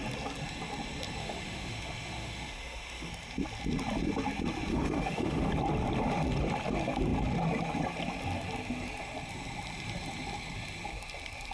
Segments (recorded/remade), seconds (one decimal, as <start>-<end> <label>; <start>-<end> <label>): 0.0-1.2 recorded; 1.2-3.1 remade; 3.1-4.7 recorded; 4.7-5.5 remade; 5.5-11.5 recorded

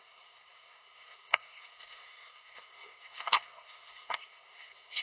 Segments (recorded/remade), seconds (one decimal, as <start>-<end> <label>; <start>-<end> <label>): 0.0-5.0 remade

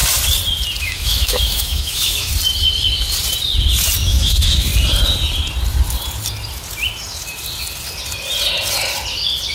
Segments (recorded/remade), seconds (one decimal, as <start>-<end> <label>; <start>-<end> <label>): 0.0-0.8 recorded; 0.8-2.3 remade; 2.3-4.0 recorded; 4.0-4.7 remade; 4.7-9.5 recorded

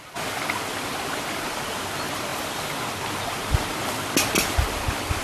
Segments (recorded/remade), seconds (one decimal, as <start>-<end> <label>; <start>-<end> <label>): 0.0-5.2 recorded

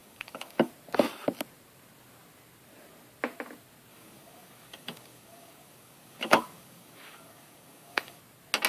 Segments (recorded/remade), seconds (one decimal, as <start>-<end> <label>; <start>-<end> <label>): 0.0-0.7 remade; 0.7-3.9 recorded; 3.9-8.2 remade; 8.2-8.7 recorded

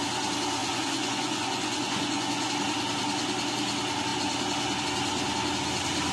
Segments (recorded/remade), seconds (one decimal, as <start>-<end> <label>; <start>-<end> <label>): 0.0-0.6 recorded; 0.6-2.5 remade; 2.5-6.1 recorded